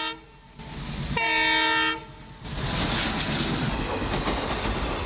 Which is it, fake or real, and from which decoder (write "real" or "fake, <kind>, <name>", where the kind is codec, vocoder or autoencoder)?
real